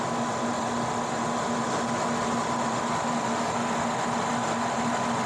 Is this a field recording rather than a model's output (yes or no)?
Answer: yes